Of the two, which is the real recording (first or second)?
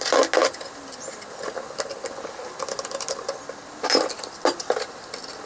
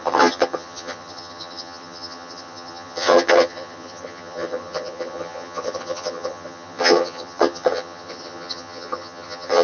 first